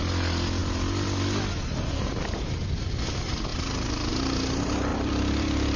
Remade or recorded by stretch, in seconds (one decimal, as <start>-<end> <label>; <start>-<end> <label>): 0.0-4.9 recorded; 4.9-5.8 remade